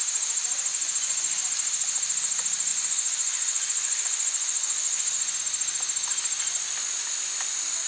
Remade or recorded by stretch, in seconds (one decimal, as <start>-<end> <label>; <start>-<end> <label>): 0.0-0.7 recorded; 0.7-1.4 remade; 1.4-2.7 recorded; 2.7-5.4 remade; 5.4-7.9 recorded